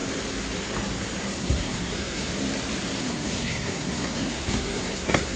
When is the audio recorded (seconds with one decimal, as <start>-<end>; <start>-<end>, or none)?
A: 0.0-1.4; 2.3-3.0